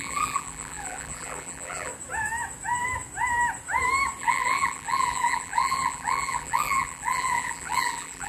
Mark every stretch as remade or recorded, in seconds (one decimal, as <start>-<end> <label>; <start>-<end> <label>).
0.0-1.9 remade; 1.9-4.2 recorded; 4.2-8.3 remade